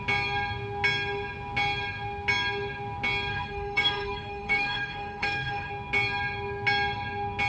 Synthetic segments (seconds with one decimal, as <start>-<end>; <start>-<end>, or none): 3.3-5.7